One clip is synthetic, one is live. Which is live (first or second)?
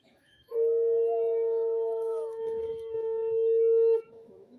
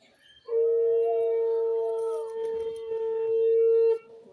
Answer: second